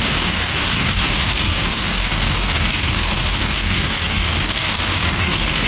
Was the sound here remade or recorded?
remade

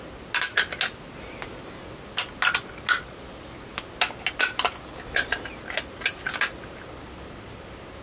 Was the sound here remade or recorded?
recorded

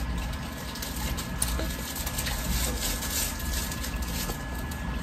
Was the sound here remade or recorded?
recorded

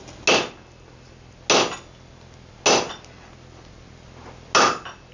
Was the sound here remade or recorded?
recorded